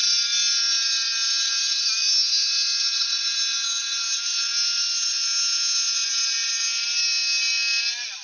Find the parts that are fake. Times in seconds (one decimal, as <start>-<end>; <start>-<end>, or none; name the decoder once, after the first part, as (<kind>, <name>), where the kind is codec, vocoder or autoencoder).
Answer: none